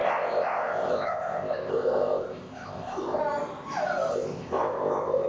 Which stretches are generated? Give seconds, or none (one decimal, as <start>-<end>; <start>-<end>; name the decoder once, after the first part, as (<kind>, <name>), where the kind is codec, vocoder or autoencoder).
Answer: 0.0-3.2 (codec, ZipCodec); 4.1-5.3